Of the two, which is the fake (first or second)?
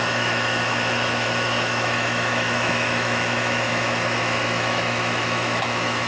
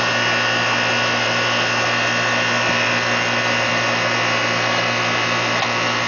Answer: first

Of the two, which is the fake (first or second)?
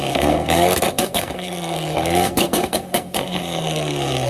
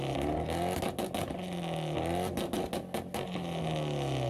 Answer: first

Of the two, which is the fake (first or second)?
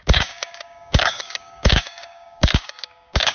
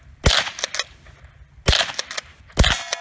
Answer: first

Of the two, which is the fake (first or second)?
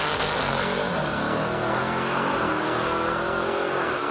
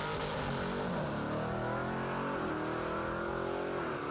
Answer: first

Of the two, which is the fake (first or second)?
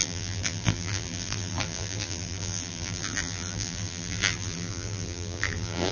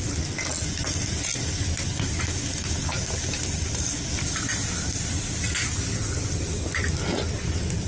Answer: first